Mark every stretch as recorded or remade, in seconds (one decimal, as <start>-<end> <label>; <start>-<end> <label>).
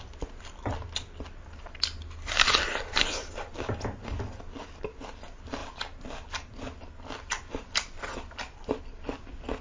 0.0-9.6 recorded